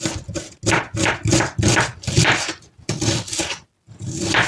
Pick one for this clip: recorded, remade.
recorded